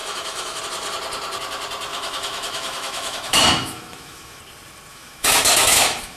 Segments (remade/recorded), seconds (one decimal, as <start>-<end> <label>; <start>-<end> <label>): 0.0-0.6 remade; 0.6-1.9 recorded; 1.9-4.4 remade; 4.4-4.9 recorded; 4.9-6.2 remade